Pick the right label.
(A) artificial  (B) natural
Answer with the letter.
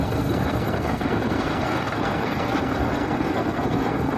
A